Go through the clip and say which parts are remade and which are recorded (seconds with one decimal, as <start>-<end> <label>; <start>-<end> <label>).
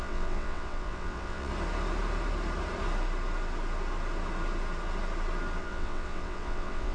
0.0-1.5 remade; 1.5-5.6 recorded; 5.6-6.9 remade